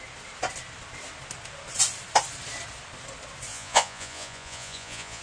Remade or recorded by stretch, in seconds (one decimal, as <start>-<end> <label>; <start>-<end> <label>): 0.0-3.5 recorded; 3.5-5.2 remade